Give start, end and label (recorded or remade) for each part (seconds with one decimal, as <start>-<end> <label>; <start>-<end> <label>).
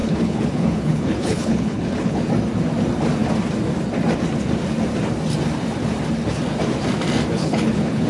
0.0-2.2 remade; 2.2-7.4 recorded; 7.4-8.1 remade